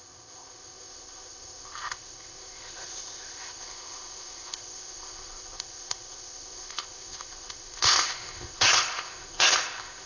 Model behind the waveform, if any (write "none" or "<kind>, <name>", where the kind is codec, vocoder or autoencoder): codec, ZipCodec